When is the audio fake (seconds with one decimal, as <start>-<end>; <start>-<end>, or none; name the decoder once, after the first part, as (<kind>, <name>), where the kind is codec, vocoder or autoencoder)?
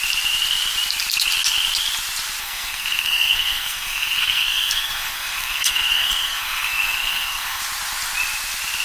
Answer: 2.4-7.6 (codec, SNAC)